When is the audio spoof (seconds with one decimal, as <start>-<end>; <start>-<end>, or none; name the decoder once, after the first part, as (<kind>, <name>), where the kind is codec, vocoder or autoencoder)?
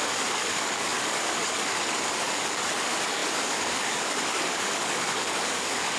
0.0-6.0 (codec, DAC)